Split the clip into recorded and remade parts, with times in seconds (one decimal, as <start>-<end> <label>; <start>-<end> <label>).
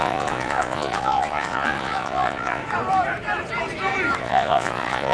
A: 0.0-2.6 remade; 2.6-4.2 recorded; 4.2-5.1 remade